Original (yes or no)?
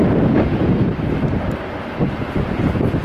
yes